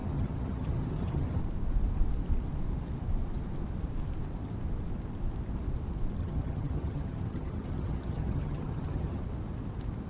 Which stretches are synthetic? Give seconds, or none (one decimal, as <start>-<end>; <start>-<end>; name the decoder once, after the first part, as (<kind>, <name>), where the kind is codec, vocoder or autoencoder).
0.0-1.4 (vocoder, HiFi-GAN); 6.2-9.2